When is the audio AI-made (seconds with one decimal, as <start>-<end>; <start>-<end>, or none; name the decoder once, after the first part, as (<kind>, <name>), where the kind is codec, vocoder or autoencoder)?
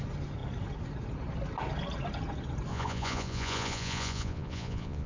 2.7-5.1 (vocoder, Vocos)